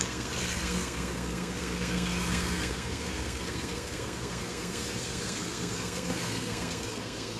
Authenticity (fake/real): fake